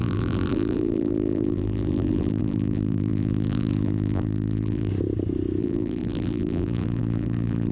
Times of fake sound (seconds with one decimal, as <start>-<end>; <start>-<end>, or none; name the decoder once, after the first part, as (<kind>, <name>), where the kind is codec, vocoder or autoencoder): 0.0-4.9 (vocoder, BigVGAN v2); 5.6-7.7